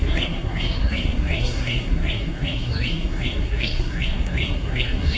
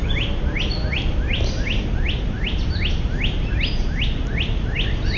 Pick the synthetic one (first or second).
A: first